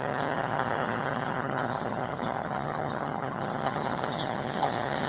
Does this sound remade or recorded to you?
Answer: remade